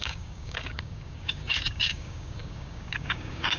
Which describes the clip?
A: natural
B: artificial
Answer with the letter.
B